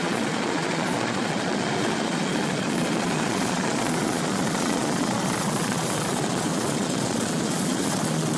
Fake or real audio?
fake